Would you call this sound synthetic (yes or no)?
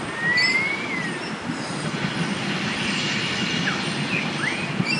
no